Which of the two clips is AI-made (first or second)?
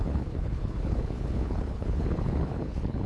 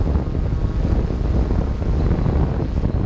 first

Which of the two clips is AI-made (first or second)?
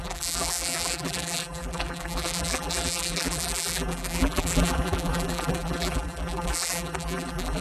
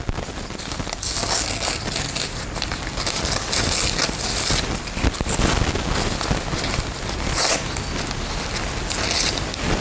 first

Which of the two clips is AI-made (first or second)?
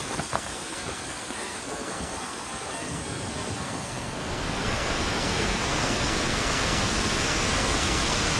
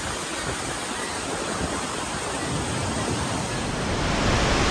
first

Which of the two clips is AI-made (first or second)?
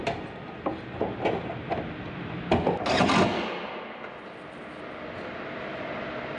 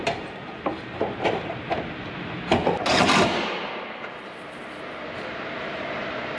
second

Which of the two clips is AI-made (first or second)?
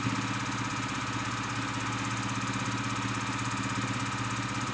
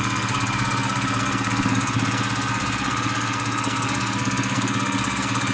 second